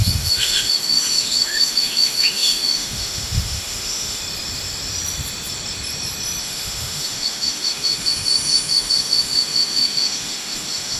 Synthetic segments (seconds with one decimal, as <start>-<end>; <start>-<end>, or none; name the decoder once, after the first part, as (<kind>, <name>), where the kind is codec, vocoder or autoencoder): 0.0-4.2 (autoencoder, DAC-VAE); 6.4-11.0